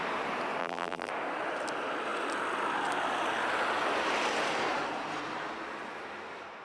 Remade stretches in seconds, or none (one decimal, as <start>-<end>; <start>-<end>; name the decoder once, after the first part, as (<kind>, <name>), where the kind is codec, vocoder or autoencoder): 0.6-1.1 (vocoder, BigVGAN v2)